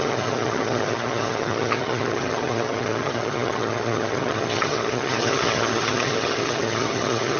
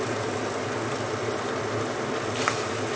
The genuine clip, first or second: second